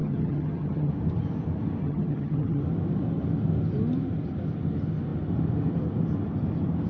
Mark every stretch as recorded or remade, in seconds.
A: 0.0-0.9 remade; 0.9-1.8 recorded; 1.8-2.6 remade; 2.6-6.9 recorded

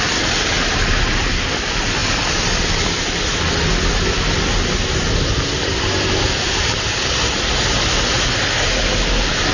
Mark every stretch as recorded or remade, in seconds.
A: 0.0-9.5 recorded

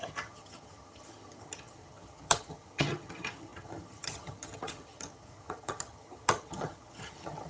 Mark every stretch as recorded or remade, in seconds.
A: 0.0-7.5 remade